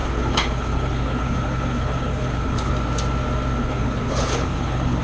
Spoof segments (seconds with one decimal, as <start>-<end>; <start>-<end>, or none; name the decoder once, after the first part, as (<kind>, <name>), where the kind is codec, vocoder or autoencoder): 0.0-2.7 (codec, HILCodec); 3.6-5.0